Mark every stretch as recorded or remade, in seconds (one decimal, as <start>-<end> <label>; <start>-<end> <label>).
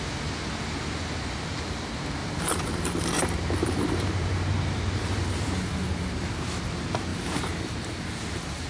0.0-2.2 recorded; 2.2-6.3 remade; 6.3-7.1 recorded; 7.1-8.7 remade